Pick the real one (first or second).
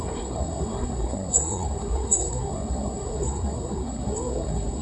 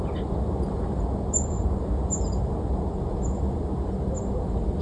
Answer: second